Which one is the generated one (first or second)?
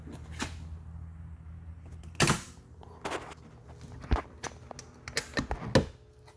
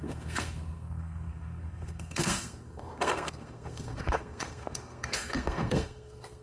second